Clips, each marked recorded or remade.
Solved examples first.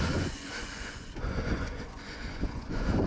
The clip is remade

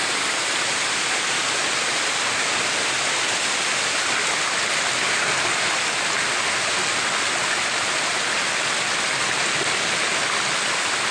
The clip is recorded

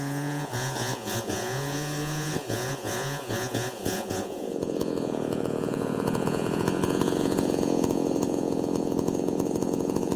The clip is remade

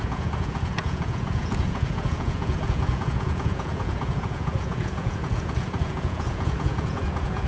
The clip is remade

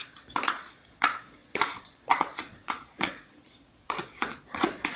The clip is remade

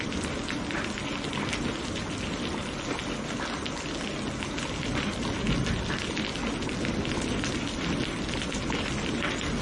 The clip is recorded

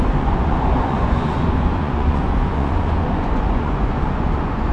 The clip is remade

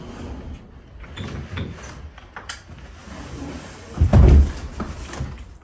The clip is recorded